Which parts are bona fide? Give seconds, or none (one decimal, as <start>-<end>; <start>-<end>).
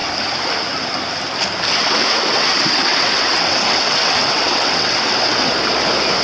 0.0-1.8; 5.5-6.2